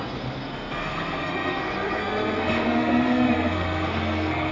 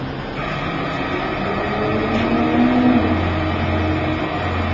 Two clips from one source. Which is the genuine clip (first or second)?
second